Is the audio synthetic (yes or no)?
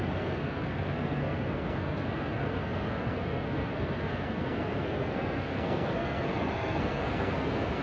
yes